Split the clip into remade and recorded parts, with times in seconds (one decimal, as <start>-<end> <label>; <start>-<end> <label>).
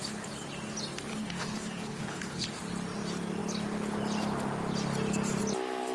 0.0-1.1 recorded; 1.1-2.5 remade; 2.5-5.9 recorded